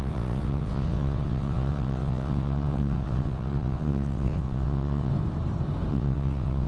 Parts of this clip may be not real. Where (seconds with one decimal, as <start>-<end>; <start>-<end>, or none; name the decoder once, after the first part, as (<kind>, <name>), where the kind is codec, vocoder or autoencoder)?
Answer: 0.0-5.1 (vocoder, WaveNeXt); 5.9-6.7